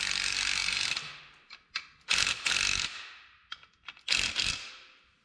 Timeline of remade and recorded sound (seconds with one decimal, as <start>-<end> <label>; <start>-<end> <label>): 0.0-5.2 recorded

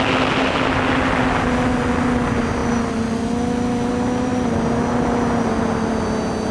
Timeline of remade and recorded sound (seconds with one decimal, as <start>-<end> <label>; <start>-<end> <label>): 0.0-6.5 recorded

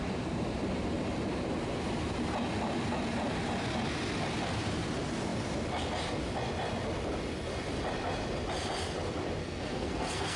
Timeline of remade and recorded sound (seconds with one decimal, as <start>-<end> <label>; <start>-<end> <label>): 0.0-9.4 recorded; 9.4-10.4 remade

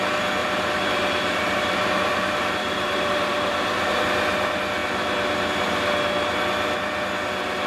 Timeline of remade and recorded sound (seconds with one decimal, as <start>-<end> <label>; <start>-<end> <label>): 0.0-0.4 recorded; 0.4-4.1 remade; 4.1-7.7 recorded

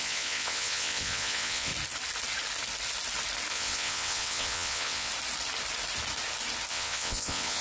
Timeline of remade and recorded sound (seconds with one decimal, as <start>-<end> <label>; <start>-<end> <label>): 0.0-1.7 remade; 1.7-3.5 recorded; 3.5-5.1 remade; 5.1-6.7 recorded; 6.7-7.6 remade